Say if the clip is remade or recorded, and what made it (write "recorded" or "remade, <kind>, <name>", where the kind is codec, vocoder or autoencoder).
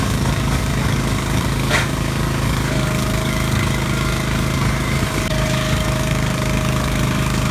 remade, codec, DAC